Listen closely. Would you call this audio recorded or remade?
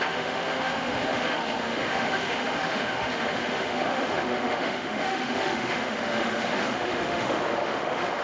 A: remade